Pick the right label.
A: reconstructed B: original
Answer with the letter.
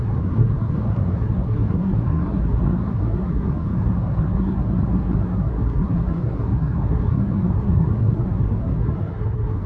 A